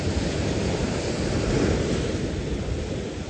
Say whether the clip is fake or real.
real